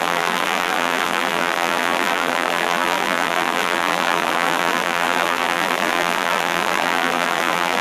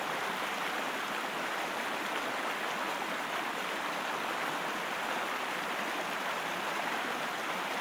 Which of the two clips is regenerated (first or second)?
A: first